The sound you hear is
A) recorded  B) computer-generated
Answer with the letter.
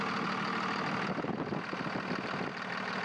A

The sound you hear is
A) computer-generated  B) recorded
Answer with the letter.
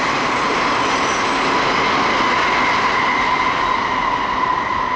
B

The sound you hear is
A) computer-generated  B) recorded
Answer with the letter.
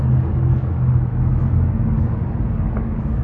A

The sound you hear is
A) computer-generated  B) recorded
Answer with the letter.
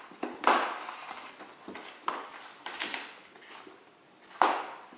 B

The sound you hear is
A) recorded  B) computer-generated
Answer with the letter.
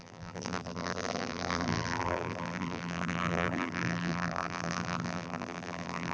B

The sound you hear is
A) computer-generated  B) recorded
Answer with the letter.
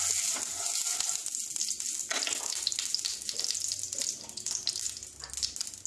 B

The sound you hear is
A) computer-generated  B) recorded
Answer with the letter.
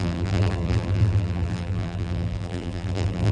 A